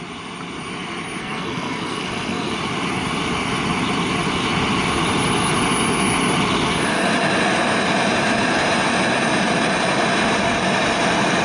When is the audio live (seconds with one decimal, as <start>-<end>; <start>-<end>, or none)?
0.0-1.2; 2.5-11.4